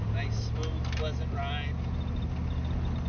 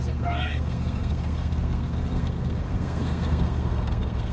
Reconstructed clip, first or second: second